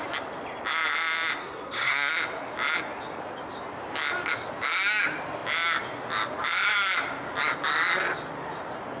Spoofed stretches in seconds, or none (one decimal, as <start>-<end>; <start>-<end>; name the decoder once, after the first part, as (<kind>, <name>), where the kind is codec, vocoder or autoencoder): 1.4-2.1 (codec, SNAC)